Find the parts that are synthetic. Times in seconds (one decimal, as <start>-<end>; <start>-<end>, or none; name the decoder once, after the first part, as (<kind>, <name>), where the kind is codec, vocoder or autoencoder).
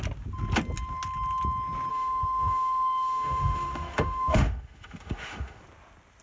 1.9-5.6 (autoencoder, DAC-VAE)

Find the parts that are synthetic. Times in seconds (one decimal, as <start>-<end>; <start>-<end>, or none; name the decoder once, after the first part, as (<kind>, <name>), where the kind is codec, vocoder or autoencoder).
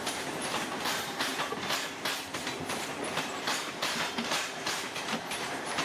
0.0-1.3 (vocoder, BigVGAN v2); 3.2-5.8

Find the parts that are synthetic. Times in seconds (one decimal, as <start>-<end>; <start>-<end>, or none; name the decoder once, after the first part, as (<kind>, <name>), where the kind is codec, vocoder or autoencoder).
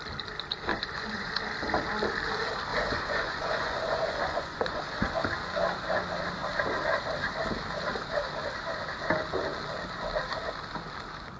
0.7-1.3 (vocoder, Vocos); 2.7-4.8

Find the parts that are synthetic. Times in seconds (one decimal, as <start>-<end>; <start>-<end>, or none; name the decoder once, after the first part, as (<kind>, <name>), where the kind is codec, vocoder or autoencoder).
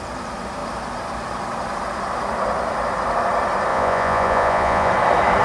3.7-4.9 (vocoder, Vocos)